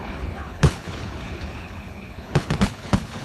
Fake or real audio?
fake